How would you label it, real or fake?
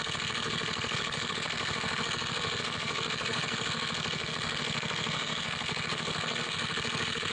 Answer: fake